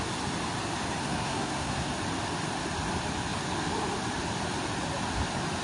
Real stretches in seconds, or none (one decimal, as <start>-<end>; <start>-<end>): 0.0-1.0; 1.9-5.6